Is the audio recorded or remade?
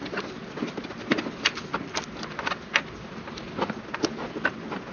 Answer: recorded